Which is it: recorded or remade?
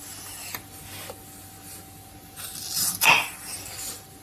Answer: recorded